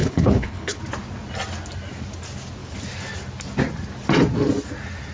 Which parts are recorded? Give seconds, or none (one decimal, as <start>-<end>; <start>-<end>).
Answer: 0.8-5.1